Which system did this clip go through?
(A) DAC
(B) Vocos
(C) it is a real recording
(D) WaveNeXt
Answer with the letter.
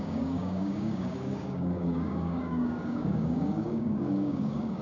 A